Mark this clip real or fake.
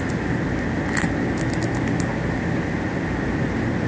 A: real